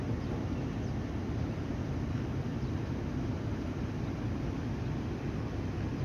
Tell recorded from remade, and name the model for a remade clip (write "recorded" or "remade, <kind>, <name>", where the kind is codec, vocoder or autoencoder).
recorded